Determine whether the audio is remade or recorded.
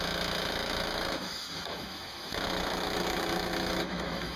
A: remade